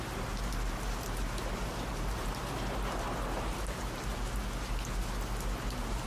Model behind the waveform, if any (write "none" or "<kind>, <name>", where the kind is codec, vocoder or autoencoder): none